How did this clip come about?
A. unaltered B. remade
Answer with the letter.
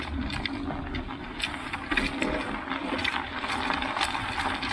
A